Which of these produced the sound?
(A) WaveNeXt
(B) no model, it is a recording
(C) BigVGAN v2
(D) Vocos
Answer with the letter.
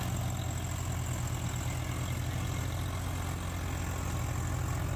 B